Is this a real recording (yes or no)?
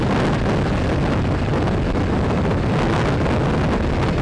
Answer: yes